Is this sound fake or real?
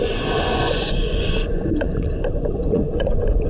fake